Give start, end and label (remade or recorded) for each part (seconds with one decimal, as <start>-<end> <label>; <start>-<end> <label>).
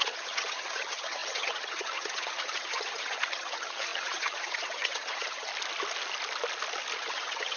0.0-5.5 remade; 5.5-7.0 recorded; 7.0-7.6 remade